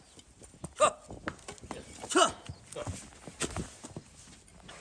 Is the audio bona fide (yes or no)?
yes